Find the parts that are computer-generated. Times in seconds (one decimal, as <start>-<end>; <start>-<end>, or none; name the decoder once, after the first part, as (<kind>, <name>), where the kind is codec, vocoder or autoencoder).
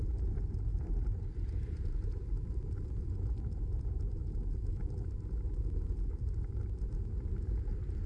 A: 0.7-2.6 (vocoder, BigVGAN v2)